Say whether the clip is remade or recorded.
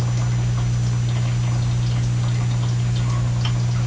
recorded